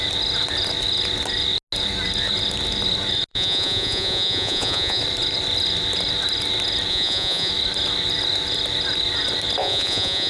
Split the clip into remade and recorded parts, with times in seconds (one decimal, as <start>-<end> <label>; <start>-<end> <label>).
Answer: 0.0-3.3 recorded; 3.3-5.0 remade; 5.0-6.9 recorded; 6.9-7.5 remade; 7.5-9.6 recorded; 9.6-10.3 remade